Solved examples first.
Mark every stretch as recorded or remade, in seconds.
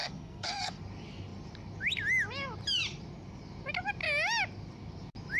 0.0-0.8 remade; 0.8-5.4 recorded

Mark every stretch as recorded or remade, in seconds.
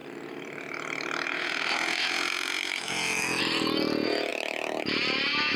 0.0-5.6 recorded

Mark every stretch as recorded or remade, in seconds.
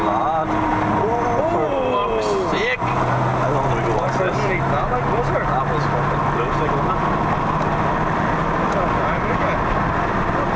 0.0-10.6 recorded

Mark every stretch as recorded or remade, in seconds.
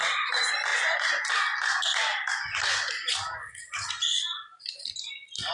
0.0-5.5 recorded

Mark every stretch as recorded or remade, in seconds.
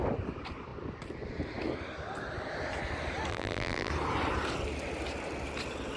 0.0-3.3 recorded; 3.3-3.9 remade; 3.9-6.0 recorded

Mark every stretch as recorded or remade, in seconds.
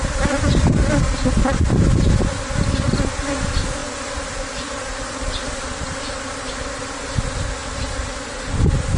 0.0-3.8 recorded; 3.8-5.3 remade; 5.3-9.0 recorded